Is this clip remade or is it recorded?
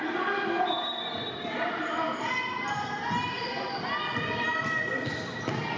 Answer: remade